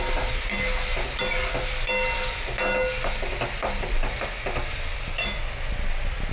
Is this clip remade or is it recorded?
recorded